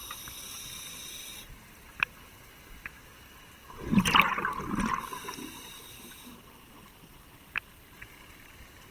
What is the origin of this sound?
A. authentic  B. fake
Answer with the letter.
A